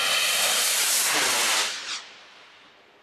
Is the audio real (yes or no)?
yes